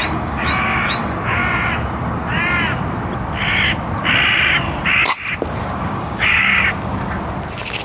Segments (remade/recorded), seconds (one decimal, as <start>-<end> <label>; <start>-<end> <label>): 0.0-1.4 remade; 1.4-5.6 recorded; 5.6-6.5 remade; 6.5-7.8 recorded